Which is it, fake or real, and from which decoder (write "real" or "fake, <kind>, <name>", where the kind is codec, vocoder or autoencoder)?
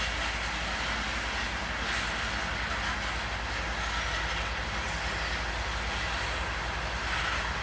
real